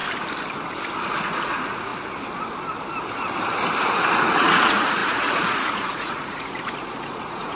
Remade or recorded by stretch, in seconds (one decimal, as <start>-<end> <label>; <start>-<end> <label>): 0.0-1.1 recorded; 1.1-1.9 remade; 1.9-4.1 recorded; 4.1-7.6 remade